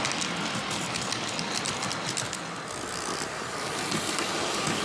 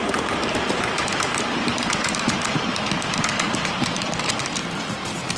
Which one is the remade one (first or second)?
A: second